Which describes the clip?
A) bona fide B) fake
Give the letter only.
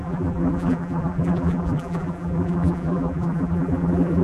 B